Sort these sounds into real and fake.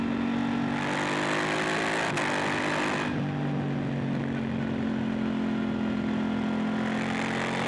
real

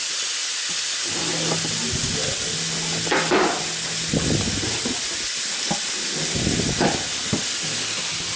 real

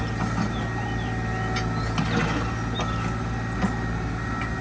real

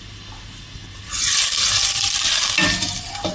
real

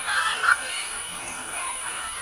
fake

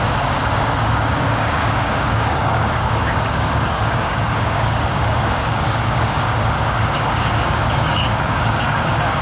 fake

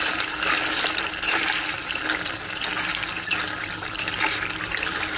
real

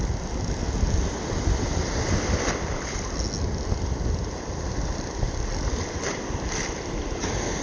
real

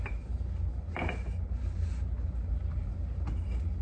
real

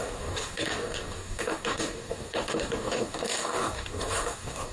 fake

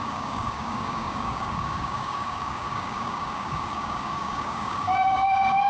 fake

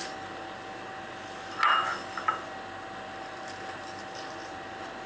real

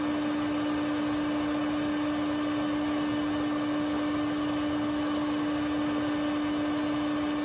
real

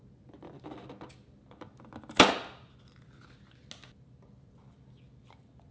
real